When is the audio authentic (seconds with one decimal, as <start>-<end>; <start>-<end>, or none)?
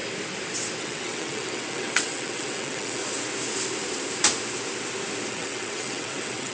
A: 0.0-0.8; 3.0-5.3